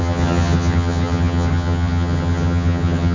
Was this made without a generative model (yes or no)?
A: no